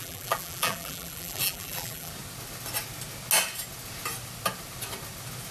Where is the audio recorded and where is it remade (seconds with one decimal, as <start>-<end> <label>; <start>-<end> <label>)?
0.0-2.1 remade; 2.1-5.5 recorded